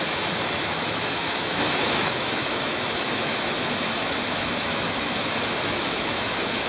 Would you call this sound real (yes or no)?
no